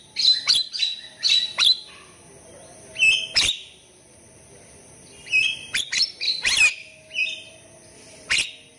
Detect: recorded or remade recorded